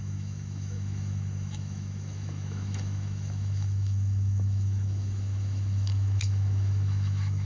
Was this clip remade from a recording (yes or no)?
yes